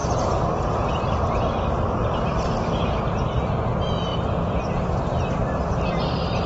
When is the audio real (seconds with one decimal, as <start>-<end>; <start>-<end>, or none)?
3.5-4.1; 5.9-6.5